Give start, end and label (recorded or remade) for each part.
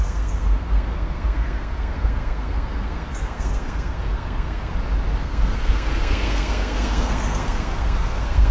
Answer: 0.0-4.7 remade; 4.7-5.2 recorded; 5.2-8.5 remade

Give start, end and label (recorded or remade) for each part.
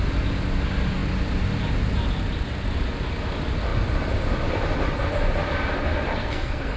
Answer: 0.0-6.1 recorded; 6.1-6.8 remade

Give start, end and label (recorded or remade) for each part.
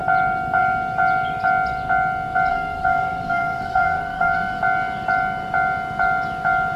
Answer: 0.0-2.5 recorded; 2.5-4.6 remade; 4.6-6.8 recorded